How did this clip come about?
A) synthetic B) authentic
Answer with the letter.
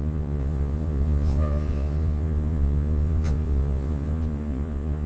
A